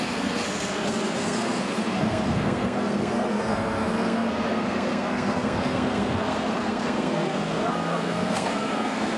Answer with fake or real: fake